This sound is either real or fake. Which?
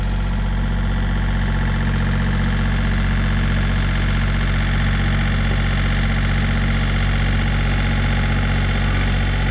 real